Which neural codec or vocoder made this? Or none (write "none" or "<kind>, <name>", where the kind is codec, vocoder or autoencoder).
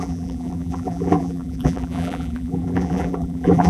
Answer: vocoder, BigVGAN v2